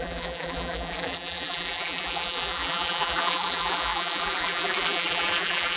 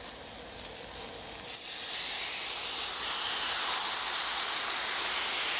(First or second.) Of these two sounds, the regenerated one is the first